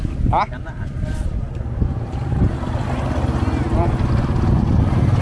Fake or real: real